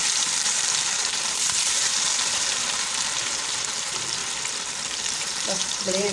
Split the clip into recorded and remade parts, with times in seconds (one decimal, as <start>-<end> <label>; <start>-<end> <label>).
0.0-4.2 remade; 4.2-4.7 recorded; 4.7-6.1 remade